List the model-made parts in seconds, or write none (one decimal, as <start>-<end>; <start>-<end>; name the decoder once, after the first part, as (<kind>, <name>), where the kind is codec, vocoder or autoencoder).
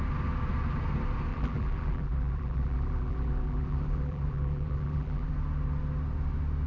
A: 1.3-5.3 (vocoder, BigVGAN v2)